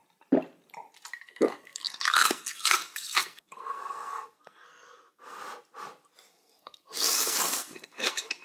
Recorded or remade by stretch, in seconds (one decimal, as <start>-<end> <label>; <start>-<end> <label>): 0.0-1.2 recorded; 1.2-5.4 remade; 5.4-6.3 recorded; 6.3-8.4 remade